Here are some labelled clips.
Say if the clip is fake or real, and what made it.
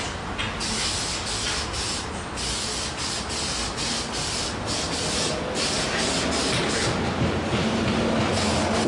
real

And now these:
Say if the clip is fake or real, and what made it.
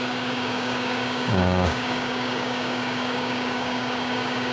fake, codec, DAC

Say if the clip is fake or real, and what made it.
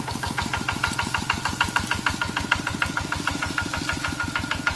real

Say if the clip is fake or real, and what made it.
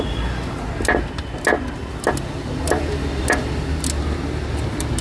real